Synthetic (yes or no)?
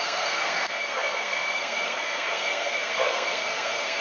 yes